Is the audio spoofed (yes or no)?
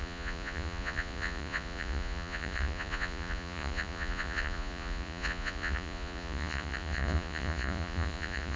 yes